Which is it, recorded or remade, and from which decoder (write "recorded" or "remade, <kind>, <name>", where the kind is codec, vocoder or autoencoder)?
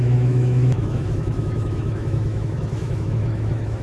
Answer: remade, autoencoder, DAC-VAE